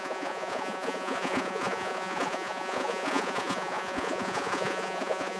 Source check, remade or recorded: remade